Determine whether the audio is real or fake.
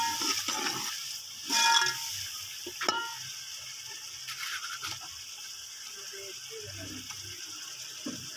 real